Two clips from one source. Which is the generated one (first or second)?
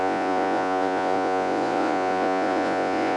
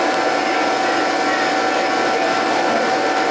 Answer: first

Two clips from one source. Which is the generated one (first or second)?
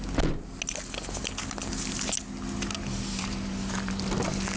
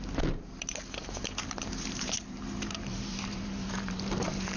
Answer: second